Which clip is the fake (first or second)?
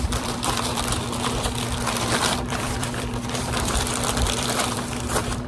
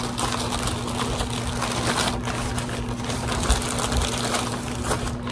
first